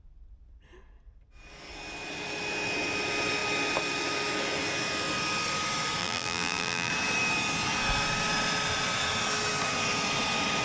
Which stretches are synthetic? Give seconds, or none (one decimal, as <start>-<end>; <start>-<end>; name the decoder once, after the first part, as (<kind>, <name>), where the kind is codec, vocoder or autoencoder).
6.0-6.9 (vocoder, BigVGAN v2)